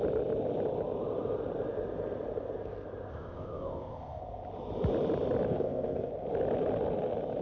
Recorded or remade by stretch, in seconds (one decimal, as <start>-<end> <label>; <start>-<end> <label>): 0.0-3.1 recorded; 3.1-4.2 remade; 4.2-5.5 recorded; 5.5-6.1 remade; 6.1-7.4 recorded